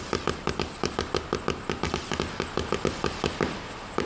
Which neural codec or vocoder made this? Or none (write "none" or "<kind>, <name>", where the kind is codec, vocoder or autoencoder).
none